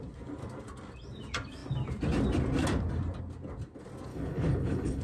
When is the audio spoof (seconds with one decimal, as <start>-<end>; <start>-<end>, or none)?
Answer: 4.1-5.0

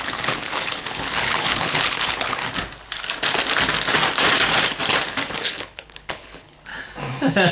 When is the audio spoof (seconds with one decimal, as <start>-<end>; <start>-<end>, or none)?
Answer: 0.0-2.4; 5.3-6.7

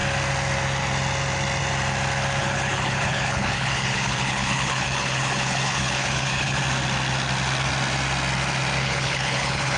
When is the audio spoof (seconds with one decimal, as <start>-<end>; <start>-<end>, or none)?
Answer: 2.4-6.6; 8.8-9.8

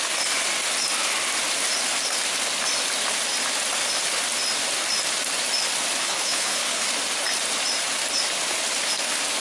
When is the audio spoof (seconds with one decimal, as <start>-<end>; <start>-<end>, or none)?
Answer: 6.0-6.9

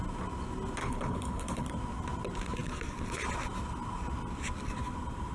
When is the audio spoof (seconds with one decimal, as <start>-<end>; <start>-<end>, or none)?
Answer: 0.8-1.7

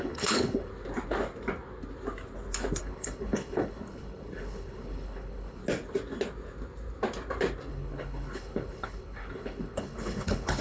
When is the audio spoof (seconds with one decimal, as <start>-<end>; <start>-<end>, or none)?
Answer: 0.0-0.7; 2.8-5.6; 7.7-10.6

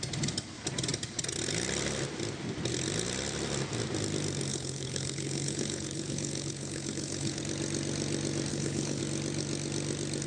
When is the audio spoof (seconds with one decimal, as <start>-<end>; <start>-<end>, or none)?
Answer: 4.5-7.4; 8.5-9.0

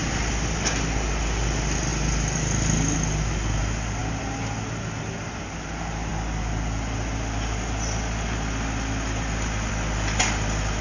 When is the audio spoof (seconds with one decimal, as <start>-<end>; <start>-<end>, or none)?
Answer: none